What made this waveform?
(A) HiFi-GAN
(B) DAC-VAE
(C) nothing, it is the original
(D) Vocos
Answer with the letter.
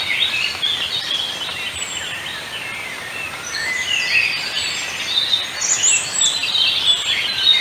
C